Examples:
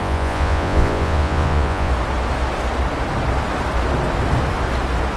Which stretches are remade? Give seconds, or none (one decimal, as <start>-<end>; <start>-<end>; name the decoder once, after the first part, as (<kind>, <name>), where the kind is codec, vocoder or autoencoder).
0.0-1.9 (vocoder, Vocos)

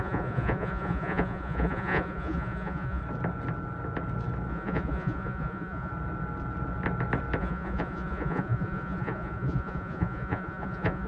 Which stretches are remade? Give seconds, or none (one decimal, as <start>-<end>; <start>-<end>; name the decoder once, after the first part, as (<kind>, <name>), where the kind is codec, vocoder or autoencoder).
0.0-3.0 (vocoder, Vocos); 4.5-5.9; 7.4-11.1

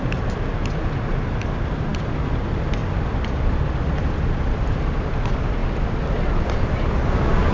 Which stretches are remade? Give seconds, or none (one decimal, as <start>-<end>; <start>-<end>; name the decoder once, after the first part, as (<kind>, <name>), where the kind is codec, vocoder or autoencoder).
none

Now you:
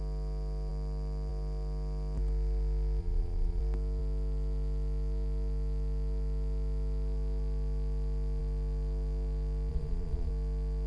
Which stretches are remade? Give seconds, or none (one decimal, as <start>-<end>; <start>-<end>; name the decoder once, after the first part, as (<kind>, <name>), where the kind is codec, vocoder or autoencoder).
3.0-3.6 (vocoder, Vocos); 9.7-10.3